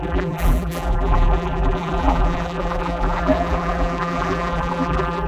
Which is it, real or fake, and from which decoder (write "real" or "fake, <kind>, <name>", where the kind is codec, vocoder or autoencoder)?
fake, vocoder, BigVGAN v2